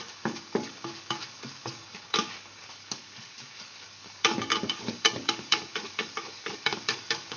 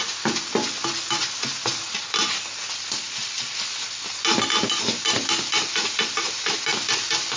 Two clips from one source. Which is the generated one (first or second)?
first